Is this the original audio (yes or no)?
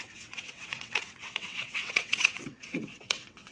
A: no